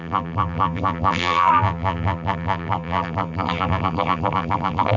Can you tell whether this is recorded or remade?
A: remade